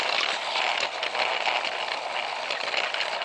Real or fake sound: real